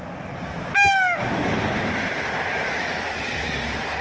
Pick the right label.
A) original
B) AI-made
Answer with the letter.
A